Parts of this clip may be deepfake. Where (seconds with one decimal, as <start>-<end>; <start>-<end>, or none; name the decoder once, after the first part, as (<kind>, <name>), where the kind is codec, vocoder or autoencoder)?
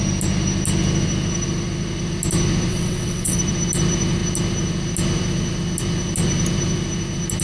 2.7-3.4 (vocoder, WaveNeXt)